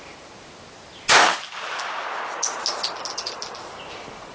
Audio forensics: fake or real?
real